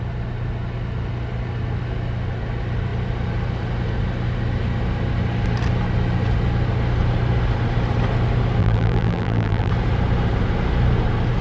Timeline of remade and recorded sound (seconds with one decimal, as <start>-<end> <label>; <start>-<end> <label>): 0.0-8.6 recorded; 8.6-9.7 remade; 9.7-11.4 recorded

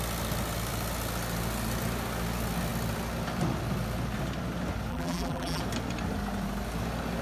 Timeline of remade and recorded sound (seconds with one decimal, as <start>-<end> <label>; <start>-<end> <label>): 0.0-4.9 recorded; 4.9-5.6 remade; 5.6-7.2 recorded

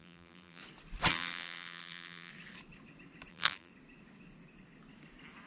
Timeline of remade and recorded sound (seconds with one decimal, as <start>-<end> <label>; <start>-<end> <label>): 0.0-0.6 remade; 0.6-1.1 recorded; 1.1-2.3 remade; 2.3-3.3 recorded; 3.3-3.7 remade; 3.7-5.5 recorded

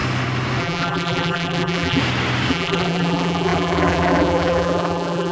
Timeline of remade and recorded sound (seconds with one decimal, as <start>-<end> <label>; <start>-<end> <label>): 0.0-0.6 recorded; 0.6-2.0 remade; 2.0-2.5 recorded; 2.5-5.3 remade

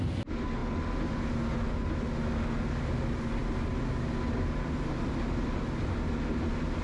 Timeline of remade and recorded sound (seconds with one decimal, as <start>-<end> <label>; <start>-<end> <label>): 0.0-6.8 recorded